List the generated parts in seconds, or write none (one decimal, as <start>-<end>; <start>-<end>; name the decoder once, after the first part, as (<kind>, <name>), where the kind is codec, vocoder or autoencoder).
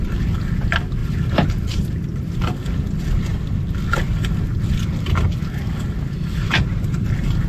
none